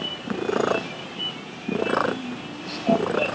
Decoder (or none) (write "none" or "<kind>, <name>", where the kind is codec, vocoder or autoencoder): none